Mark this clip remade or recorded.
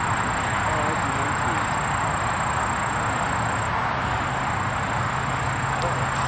recorded